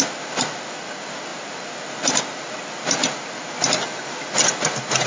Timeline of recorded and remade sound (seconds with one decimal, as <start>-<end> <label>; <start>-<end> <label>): 0.0-5.1 recorded